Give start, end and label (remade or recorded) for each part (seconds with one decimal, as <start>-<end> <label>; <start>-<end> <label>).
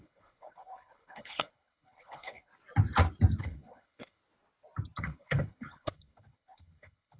0.0-2.5 remade; 2.5-3.4 recorded; 3.4-4.2 remade; 4.2-5.0 recorded; 5.0-7.2 remade